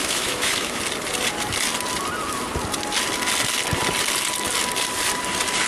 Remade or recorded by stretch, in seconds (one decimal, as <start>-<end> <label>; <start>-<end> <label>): 0.0-0.8 remade; 0.8-5.7 recorded